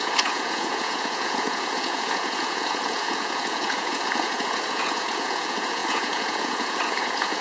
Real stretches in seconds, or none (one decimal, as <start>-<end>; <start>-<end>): none